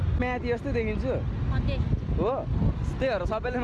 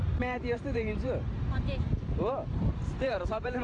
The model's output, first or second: second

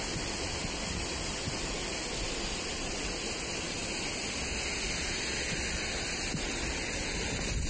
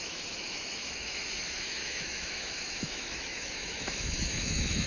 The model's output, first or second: second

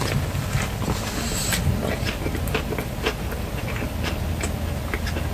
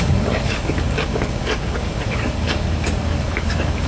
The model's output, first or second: second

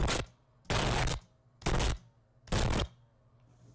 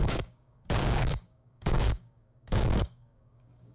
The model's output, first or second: second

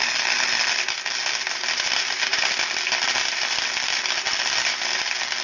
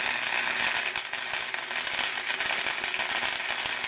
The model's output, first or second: first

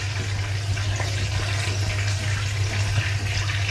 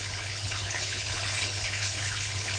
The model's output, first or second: second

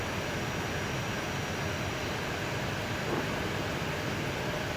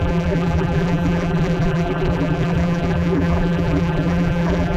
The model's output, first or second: second